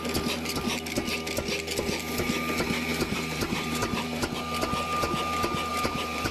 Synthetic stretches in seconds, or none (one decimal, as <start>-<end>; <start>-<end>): 2.9-4.3; 5.7-6.3